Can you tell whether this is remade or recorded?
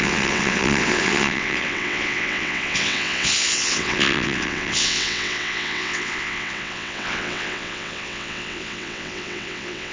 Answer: remade